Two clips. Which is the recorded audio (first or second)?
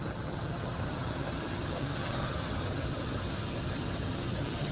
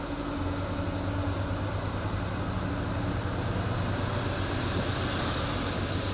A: second